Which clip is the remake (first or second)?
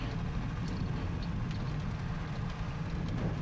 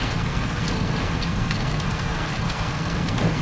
second